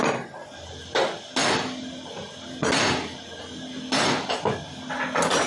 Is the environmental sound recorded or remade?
recorded